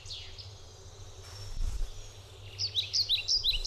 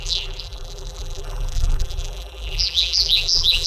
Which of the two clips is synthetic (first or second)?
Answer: second